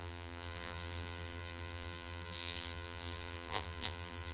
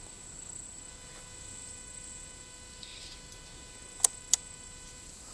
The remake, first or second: first